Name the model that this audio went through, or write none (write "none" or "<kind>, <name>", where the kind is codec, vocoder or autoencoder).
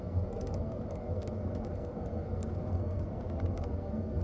codec, SNAC